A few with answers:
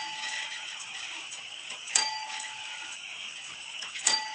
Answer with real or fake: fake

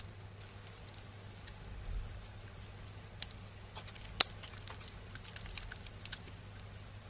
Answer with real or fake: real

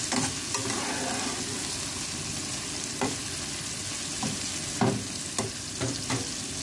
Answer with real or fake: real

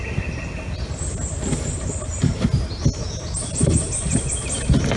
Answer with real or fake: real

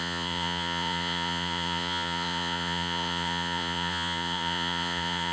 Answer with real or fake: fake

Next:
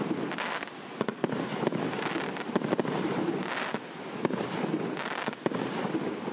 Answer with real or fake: real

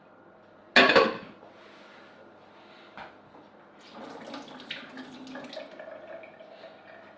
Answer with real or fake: real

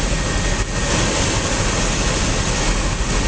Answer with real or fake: real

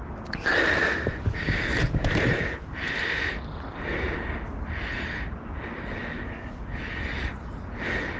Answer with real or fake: real